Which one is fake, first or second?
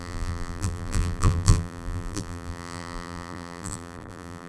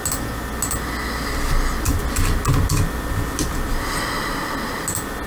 first